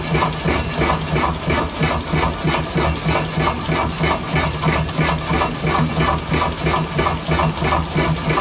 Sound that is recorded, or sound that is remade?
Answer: recorded